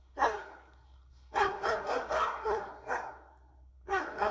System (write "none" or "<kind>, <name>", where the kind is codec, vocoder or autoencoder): codec, SNAC